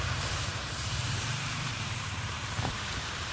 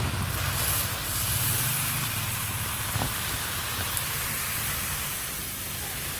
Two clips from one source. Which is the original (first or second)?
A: second